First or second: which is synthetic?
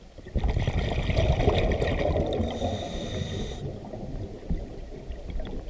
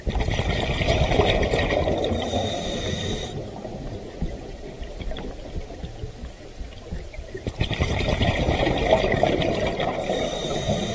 second